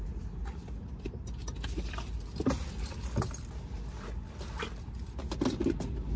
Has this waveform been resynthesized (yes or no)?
no